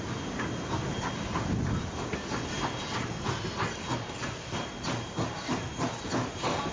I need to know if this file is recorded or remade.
recorded